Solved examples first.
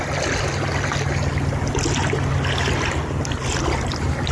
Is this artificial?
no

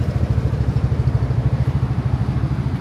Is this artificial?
no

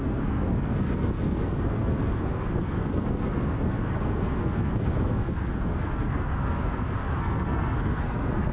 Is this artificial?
yes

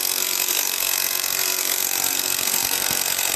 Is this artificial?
yes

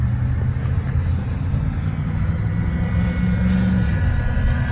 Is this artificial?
no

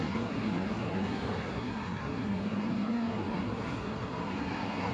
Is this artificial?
yes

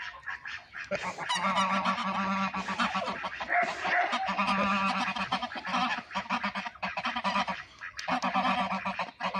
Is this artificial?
no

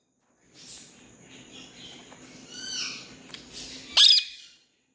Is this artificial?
no